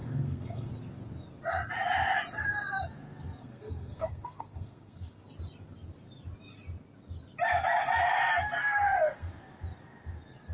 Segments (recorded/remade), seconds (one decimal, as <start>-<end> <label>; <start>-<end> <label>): 0.0-0.7 remade; 0.7-3.4 recorded; 3.4-5.2 remade; 5.2-8.6 recorded; 8.6-9.3 remade; 9.3-10.5 recorded